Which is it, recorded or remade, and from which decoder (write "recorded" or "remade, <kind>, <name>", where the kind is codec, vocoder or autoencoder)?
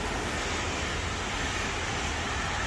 recorded